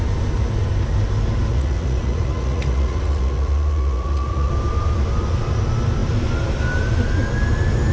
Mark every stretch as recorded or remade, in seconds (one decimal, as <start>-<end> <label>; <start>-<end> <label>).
0.0-1.5 recorded; 1.5-4.5 remade; 4.5-7.9 recorded